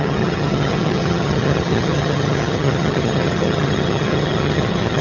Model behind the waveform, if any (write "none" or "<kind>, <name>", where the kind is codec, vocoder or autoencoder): vocoder, HiFi-GAN